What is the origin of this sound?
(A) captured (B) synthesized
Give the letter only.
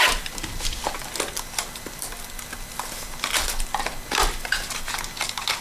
A